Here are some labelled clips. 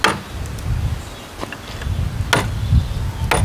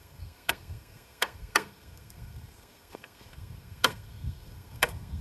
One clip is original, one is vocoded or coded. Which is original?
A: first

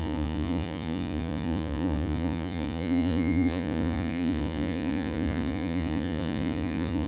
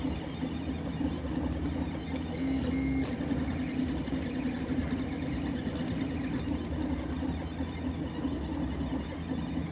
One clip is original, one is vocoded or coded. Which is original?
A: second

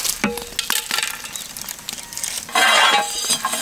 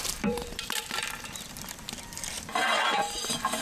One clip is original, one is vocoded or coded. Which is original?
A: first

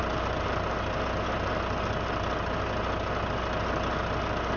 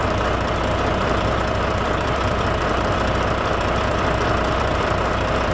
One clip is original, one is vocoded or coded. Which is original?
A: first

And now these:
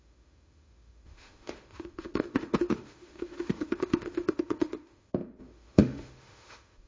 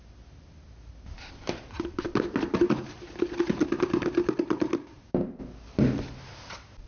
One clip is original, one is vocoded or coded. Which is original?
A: second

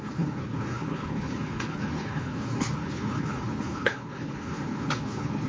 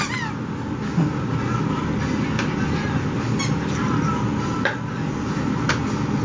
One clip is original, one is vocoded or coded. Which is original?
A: second